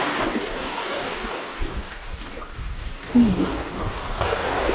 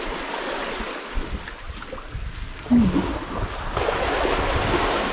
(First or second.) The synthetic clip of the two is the first